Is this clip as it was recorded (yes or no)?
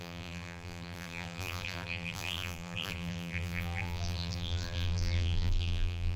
no